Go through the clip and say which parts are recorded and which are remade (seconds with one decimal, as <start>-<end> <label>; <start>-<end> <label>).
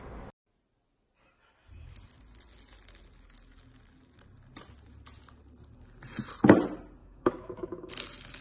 0.0-7.0 recorded; 7.0-7.9 remade; 7.9-8.4 recorded